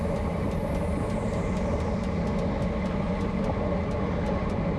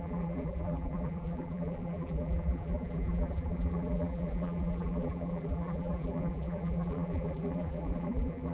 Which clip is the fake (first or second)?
second